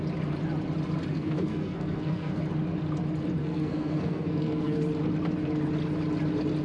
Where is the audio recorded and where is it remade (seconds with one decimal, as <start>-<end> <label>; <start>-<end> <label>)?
0.0-1.1 recorded; 1.1-2.4 remade; 2.4-3.4 recorded; 3.4-4.8 remade; 4.8-6.6 recorded

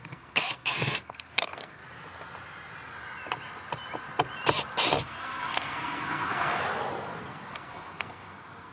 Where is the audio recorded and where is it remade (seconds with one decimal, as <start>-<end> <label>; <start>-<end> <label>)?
0.0-1.8 remade; 1.8-5.0 recorded; 5.0-6.6 remade; 6.6-7.2 recorded; 7.2-8.7 remade

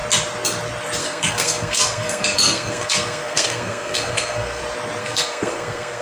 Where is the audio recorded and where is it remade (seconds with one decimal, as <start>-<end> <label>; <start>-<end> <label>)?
0.0-1.0 recorded; 1.0-4.6 remade; 4.6-5.0 recorded; 5.0-6.0 remade